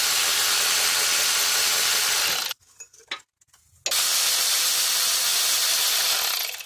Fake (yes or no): no